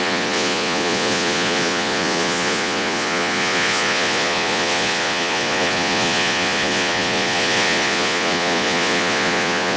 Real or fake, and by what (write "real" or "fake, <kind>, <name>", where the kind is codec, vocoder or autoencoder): fake, vocoder, Vocos